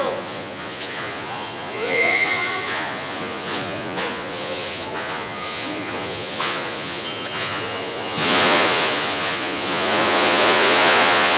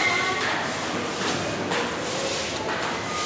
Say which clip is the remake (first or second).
first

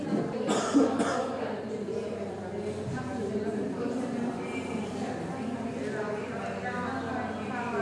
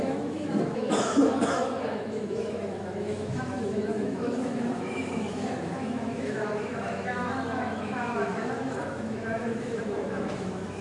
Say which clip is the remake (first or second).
second